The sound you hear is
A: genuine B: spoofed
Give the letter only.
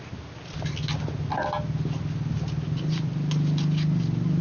A